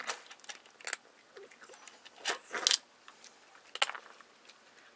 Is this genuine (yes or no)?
yes